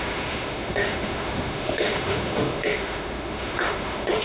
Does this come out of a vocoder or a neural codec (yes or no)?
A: yes